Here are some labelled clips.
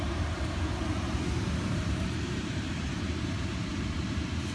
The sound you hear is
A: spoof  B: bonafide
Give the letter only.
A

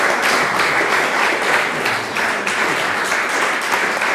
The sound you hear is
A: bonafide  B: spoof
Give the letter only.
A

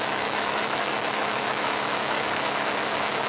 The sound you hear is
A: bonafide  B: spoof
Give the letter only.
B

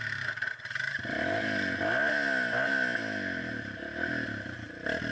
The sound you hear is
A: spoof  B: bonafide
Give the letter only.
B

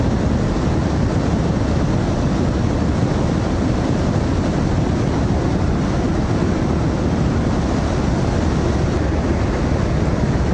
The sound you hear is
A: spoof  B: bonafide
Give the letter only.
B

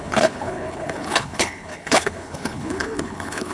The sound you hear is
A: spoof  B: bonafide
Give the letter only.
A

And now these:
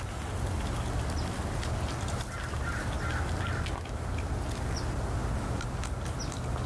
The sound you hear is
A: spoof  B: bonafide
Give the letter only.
B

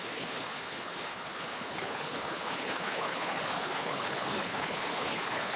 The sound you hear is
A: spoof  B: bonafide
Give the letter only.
A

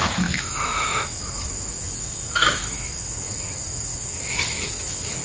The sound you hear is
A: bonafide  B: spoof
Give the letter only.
B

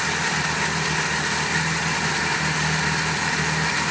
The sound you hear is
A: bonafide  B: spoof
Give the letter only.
A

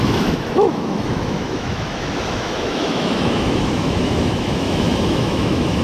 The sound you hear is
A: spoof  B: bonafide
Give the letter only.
A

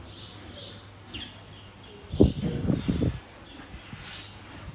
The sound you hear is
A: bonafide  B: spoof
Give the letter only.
A